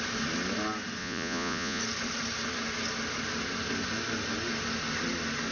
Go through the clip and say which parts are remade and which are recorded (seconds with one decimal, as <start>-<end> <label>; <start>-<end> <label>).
0.0-1.0 recorded; 1.0-1.8 remade; 1.8-5.5 recorded